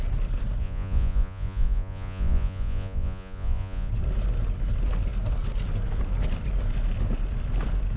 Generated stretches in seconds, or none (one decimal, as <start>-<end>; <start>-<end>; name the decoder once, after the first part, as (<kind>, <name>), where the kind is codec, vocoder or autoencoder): 0.6-3.9 (vocoder, Vocos)